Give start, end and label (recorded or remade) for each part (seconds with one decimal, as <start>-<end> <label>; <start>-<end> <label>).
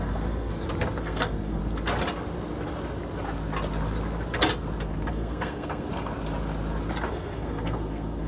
0.0-0.5 remade; 0.5-1.0 recorded; 1.0-1.6 remade; 1.6-5.1 recorded; 5.1-5.9 remade; 5.9-7.1 recorded; 7.1-8.3 remade